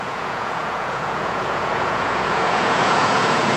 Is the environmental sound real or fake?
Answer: fake